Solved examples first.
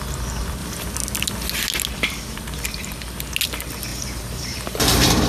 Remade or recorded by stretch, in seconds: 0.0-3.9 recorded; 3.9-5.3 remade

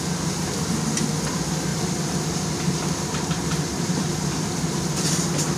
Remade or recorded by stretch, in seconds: 0.0-1.7 recorded; 1.7-5.1 remade; 5.1-5.6 recorded

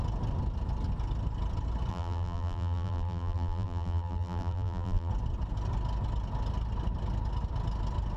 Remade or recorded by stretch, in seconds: 0.0-1.9 recorded; 1.9-5.1 remade; 5.1-8.2 recorded